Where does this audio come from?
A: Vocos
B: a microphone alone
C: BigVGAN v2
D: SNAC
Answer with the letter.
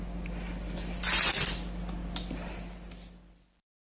B